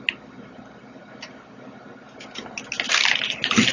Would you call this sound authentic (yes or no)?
yes